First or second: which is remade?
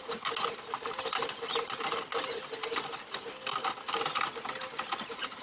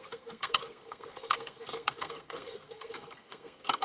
second